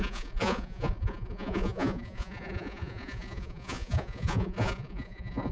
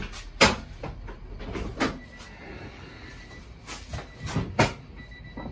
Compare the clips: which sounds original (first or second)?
second